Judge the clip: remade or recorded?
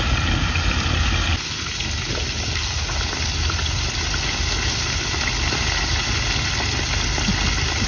recorded